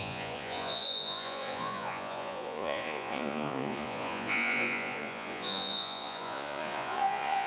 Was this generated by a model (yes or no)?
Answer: yes